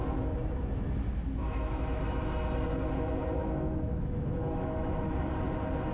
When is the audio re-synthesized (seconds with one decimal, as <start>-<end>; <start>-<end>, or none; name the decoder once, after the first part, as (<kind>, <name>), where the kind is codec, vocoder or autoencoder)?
1.4-2.0 (autoencoder, DAC-VAE); 3.4-5.3